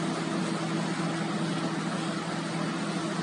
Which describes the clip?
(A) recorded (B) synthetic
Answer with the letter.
A